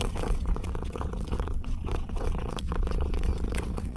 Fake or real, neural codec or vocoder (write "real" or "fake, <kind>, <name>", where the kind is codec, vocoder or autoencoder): fake, vocoder, WaveNeXt